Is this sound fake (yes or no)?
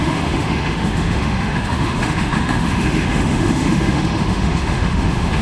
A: yes